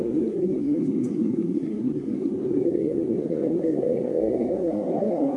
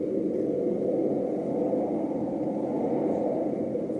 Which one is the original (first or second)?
second